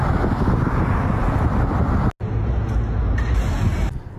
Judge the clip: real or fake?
real